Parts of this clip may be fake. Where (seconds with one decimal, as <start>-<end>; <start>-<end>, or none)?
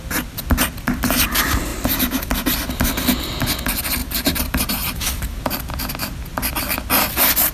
4.0-5.9